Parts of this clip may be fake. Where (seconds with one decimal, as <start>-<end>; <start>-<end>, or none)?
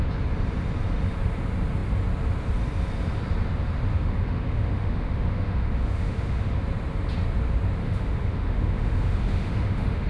3.9-6.6; 7.8-10.1